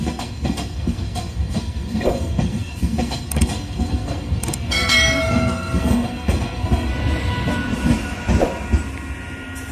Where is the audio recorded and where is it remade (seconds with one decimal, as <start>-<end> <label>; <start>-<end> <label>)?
0.0-6.9 remade; 6.9-9.7 recorded